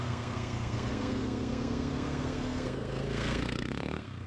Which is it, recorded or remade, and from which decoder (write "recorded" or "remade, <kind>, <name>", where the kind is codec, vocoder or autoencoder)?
remade, codec, SNAC